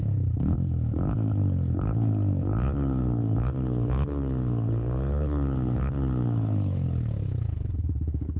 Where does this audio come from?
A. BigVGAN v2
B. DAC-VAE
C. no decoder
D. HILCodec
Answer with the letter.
D